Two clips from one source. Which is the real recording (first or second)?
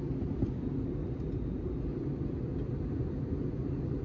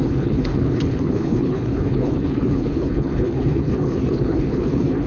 first